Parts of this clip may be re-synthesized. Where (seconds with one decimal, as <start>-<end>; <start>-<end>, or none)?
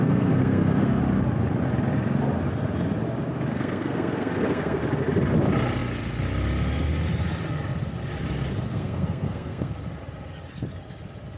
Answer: 0.0-1.0; 3.5-4.8; 8.7-9.7